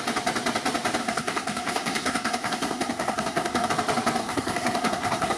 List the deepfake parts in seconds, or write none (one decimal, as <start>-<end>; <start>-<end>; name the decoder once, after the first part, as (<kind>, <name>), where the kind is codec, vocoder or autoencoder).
1.0-3.7 (codec, SNAC); 4.2-5.4